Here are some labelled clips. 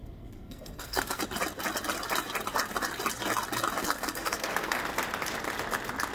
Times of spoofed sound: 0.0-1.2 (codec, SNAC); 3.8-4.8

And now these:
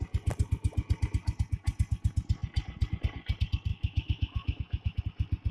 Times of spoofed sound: 3.7-5.0 (autoencoder, DAC-VAE)

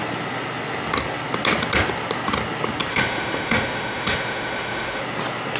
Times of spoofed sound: 2.9-5.0 (autoencoder, DAC-VAE)

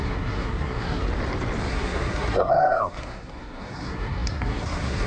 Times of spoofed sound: 0.0-1.1 (codec, SNAC); 1.7-5.1